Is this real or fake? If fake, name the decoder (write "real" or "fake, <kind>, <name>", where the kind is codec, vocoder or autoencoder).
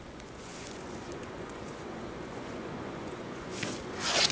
fake, vocoder, Vocos